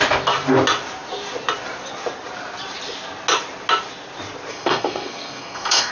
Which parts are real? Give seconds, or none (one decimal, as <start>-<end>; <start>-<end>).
0.0-4.5